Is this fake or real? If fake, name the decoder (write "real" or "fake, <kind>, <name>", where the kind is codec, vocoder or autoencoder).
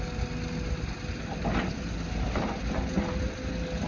real